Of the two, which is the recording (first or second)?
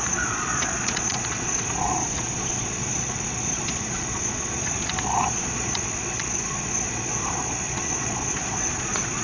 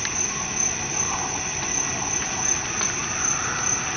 second